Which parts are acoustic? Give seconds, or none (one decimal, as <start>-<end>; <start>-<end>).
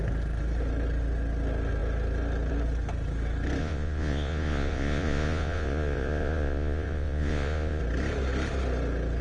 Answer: 0.0-3.6; 7.8-9.2